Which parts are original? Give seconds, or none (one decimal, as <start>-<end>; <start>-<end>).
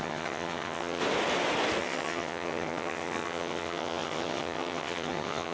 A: 1.0-1.8